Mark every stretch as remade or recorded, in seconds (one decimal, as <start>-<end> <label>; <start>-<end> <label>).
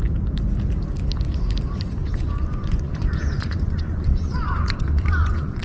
0.0-2.0 recorded; 2.0-5.6 remade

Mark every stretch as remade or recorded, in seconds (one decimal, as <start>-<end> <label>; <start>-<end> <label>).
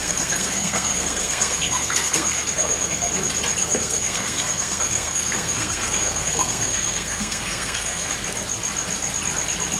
0.0-3.1 remade; 3.1-3.6 recorded; 3.6-8.1 remade; 8.1-9.8 recorded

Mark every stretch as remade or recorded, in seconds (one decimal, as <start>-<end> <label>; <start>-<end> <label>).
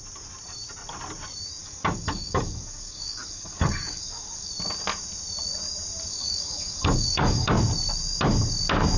0.0-1.6 recorded; 1.6-4.5 remade; 4.5-6.1 recorded; 6.1-7.5 remade; 7.5-9.0 recorded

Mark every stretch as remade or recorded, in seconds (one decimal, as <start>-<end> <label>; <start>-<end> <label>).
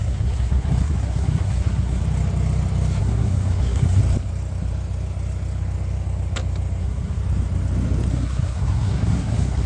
0.0-2.0 remade; 2.0-3.0 recorded; 3.0-4.0 remade; 4.0-6.8 recorded; 6.8-7.2 remade; 7.2-8.1 recorded; 8.1-9.7 remade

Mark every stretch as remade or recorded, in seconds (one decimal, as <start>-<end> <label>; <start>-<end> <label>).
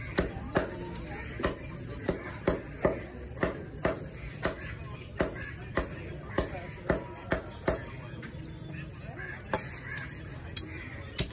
0.0-11.3 recorded